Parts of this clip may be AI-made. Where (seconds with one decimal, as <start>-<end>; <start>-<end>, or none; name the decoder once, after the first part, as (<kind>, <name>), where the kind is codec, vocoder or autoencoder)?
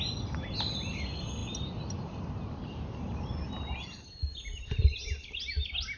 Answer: none